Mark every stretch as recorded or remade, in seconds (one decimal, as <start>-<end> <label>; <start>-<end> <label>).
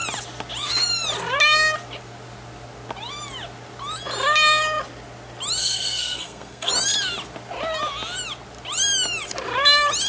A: 0.0-5.6 recorded; 5.6-6.7 remade; 6.7-10.1 recorded